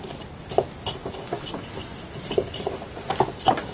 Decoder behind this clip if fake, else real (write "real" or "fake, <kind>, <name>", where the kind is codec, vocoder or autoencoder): real